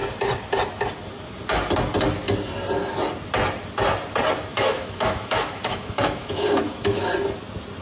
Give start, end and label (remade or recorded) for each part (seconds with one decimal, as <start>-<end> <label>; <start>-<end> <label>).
0.0-4.5 recorded; 4.5-7.1 remade; 7.1-7.8 recorded